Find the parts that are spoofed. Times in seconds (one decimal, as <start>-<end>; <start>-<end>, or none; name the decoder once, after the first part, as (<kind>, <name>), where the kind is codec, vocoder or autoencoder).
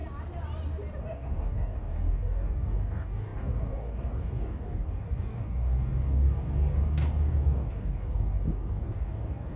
1.0-9.6 (codec, DAC)